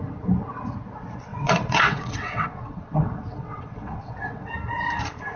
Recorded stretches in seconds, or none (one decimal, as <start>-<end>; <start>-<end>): 0.0-1.3; 4.5-5.4